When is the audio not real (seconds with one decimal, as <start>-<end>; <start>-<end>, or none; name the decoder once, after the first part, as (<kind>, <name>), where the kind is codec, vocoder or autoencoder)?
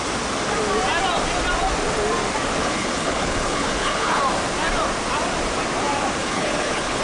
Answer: 2.6-4.2 (codec, HILCodec); 6.2-7.0